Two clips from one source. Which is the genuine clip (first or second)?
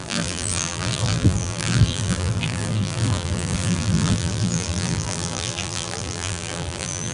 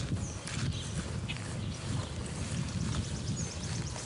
second